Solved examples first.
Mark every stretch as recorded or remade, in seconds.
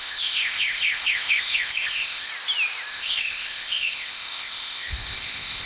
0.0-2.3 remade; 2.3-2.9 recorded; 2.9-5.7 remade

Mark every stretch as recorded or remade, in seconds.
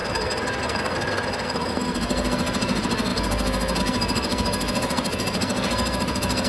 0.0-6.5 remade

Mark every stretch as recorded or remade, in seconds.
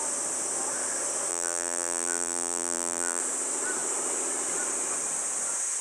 0.0-1.3 recorded; 1.3-3.2 remade; 3.2-5.8 recorded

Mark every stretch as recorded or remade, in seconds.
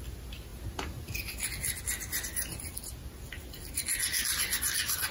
0.0-5.1 recorded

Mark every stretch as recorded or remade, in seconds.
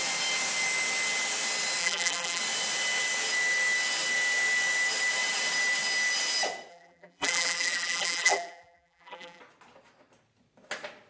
0.0-1.8 recorded; 1.8-2.4 remade; 2.4-6.7 recorded; 6.7-9.4 remade; 9.4-11.1 recorded